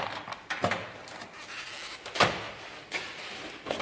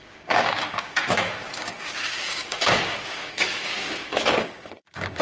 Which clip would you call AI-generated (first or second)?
second